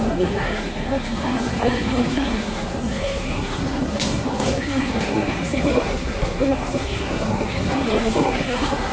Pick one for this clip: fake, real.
fake